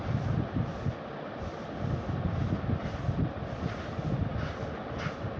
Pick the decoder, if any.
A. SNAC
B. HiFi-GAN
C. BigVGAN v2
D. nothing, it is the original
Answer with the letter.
D